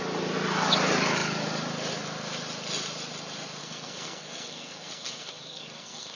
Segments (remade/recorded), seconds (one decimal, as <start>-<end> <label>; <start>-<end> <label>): 0.0-3.6 recorded; 3.6-6.2 remade